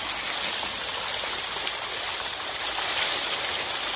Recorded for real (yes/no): yes